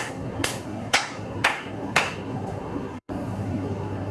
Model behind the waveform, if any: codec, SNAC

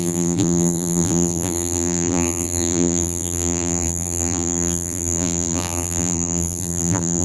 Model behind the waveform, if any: vocoder, BigVGAN v2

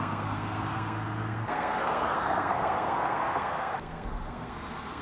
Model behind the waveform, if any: codec, SNAC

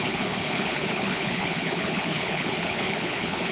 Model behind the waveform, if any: codec, HILCodec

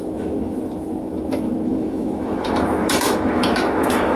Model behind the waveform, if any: autoencoder, DAC-VAE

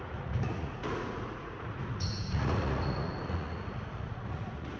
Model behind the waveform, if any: vocoder, Vocos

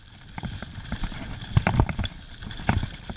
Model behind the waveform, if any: vocoder, BigVGAN v2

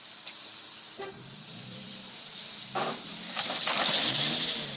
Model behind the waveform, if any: vocoder, BigVGAN v2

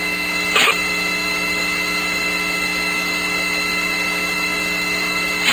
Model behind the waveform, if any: autoencoder, DAC-VAE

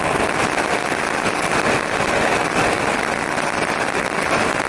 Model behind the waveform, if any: none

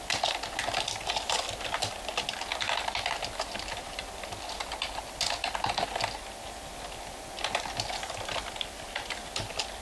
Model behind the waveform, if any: none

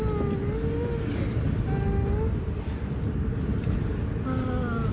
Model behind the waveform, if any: none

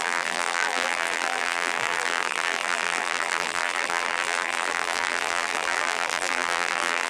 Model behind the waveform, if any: vocoder, BigVGAN v2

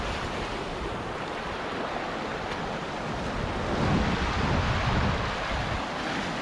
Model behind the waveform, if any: none